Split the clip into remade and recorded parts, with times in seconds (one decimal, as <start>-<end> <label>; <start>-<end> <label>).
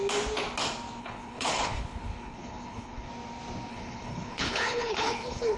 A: 0.0-1.0 recorded; 1.0-3.1 remade; 3.1-3.7 recorded; 3.7-5.6 remade